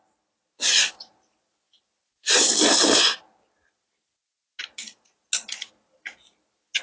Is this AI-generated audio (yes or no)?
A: no